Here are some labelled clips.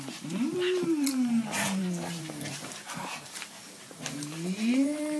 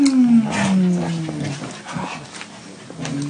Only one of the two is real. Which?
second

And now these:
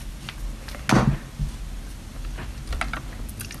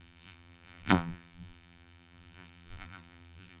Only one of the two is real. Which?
first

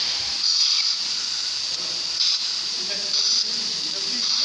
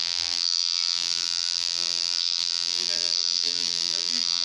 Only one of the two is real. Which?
first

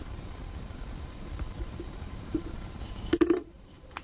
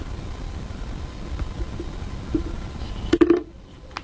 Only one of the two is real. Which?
second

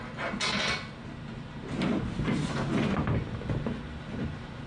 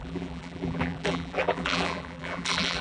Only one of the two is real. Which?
first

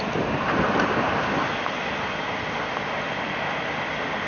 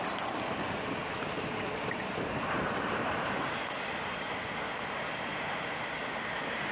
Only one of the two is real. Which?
first